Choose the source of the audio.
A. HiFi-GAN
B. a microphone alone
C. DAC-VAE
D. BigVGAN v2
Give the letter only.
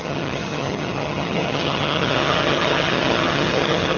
A